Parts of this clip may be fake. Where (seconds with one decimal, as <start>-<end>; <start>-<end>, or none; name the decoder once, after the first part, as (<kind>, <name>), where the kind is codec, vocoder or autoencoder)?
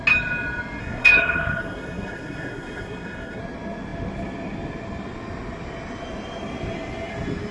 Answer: 0.8-3.4 (codec, SNAC)